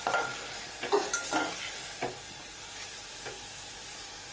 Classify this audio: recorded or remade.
recorded